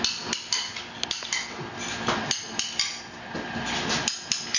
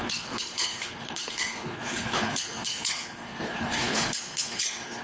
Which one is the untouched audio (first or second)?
first